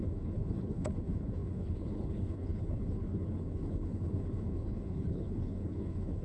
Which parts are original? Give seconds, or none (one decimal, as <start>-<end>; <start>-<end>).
none